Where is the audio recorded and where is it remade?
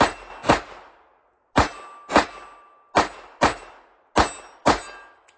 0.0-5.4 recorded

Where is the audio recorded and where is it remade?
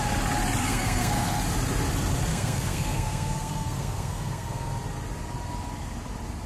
0.0-0.6 recorded; 0.6-1.4 remade; 1.4-2.3 recorded; 2.3-4.7 remade; 4.7-6.5 recorded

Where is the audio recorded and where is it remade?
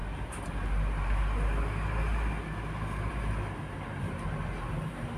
0.0-5.2 recorded